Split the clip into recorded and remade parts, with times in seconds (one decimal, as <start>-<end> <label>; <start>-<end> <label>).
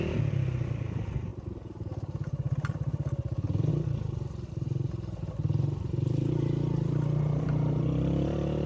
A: 0.0-8.7 recorded